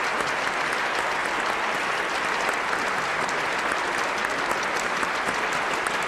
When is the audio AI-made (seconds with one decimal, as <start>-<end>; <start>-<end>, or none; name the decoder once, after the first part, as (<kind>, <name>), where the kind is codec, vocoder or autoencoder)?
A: none